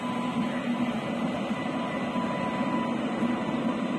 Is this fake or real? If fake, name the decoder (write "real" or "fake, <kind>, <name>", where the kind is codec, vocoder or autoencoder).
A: real